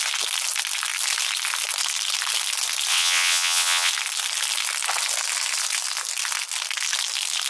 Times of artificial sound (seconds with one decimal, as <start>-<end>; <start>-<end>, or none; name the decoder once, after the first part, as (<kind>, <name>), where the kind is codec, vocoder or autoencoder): 2.9-3.9 (vocoder, WaveNeXt)